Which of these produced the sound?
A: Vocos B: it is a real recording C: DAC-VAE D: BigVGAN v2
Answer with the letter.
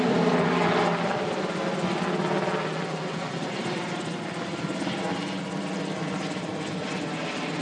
B